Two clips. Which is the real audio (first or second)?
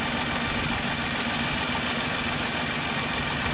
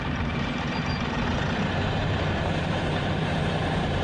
first